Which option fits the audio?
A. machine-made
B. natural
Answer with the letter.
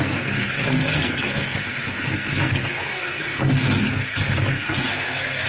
A